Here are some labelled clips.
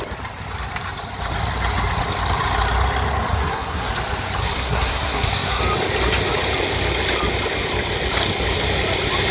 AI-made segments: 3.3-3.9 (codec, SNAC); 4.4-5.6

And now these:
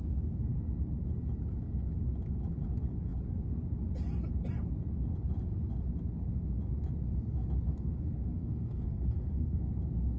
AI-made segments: 7.7-9.7 (codec, SNAC)

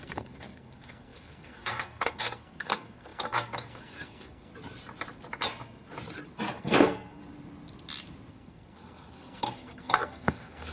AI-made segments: 0.0-4.5 (codec, SNAC); 6.6-7.2; 8.3-10.7